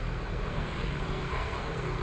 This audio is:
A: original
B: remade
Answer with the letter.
B